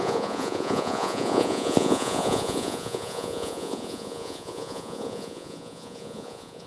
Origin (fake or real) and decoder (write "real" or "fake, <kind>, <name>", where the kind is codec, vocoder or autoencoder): fake, vocoder, Vocos